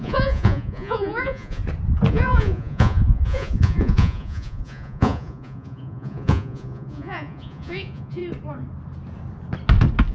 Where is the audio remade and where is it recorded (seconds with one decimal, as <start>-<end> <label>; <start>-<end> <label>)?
0.0-1.6 remade; 1.6-2.1 recorded; 2.1-8.2 remade; 8.2-10.1 recorded